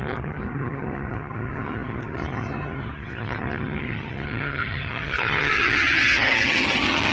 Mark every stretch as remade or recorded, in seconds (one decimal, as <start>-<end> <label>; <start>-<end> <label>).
0.0-7.1 remade